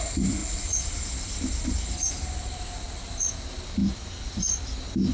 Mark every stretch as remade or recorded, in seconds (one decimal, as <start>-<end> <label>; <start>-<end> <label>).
0.0-0.4 recorded; 0.4-3.3 remade; 3.3-5.1 recorded